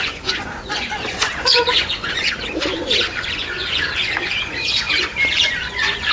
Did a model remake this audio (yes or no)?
yes